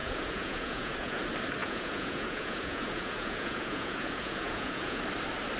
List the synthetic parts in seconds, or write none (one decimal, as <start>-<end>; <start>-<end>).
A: 0.0-1.2; 1.6-5.0